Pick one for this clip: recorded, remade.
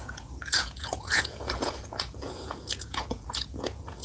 remade